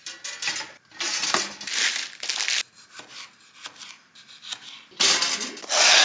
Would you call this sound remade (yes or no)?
no